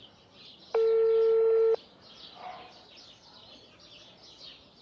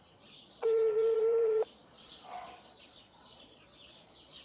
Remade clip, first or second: second